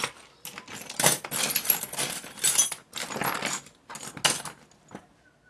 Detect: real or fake real